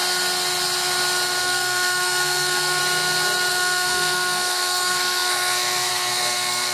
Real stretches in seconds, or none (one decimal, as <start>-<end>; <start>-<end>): 0.0-1.4; 2.8-3.5